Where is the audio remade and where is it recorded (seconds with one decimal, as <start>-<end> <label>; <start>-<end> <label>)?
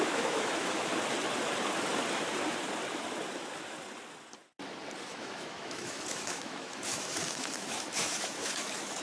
0.0-0.9 remade; 0.9-5.1 recorded; 5.1-9.0 remade